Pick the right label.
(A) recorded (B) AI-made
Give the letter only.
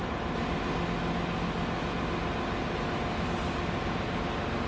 A